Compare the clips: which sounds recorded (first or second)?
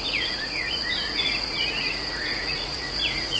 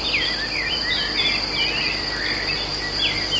second